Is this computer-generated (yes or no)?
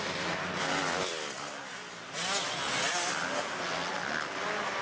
no